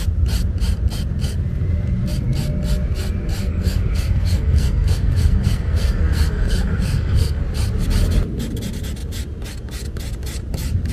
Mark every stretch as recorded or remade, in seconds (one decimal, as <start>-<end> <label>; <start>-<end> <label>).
0.0-3.4 recorded; 3.4-7.4 remade; 7.4-10.9 recorded